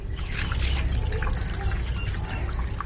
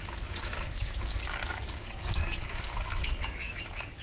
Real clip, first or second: first